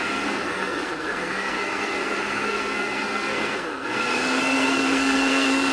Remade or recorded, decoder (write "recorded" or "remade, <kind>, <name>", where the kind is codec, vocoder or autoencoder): remade, codec, SNAC